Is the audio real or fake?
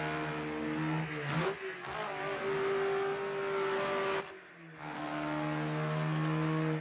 real